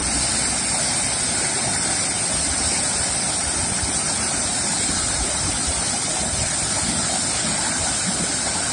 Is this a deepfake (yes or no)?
no